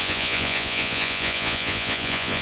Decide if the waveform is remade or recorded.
remade